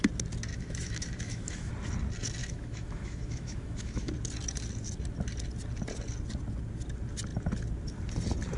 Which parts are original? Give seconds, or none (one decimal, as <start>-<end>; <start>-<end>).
0.0-0.5; 1.7-2.4; 4.1-8.6